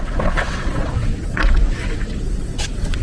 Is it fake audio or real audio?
fake